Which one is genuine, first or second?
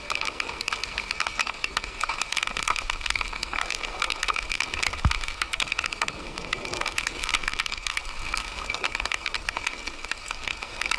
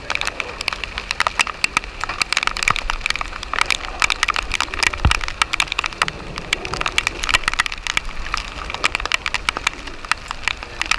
second